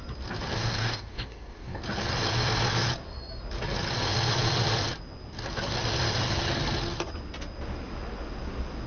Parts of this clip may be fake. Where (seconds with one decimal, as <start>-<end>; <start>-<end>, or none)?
0.5-1.8